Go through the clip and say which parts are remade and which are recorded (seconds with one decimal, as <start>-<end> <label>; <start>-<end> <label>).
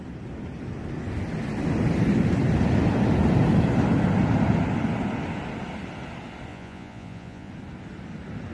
0.0-6.5 recorded; 6.5-7.5 remade; 7.5-8.5 recorded